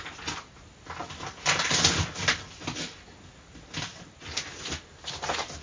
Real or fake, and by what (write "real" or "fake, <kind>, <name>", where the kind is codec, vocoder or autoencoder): real